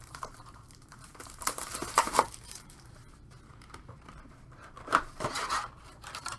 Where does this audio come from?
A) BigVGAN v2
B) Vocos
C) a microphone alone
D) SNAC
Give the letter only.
A